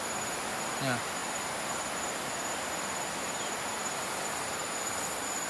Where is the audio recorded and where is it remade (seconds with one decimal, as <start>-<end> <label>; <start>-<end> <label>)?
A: 0.0-1.2 recorded; 1.2-2.3 remade; 2.3-3.8 recorded; 3.8-5.5 remade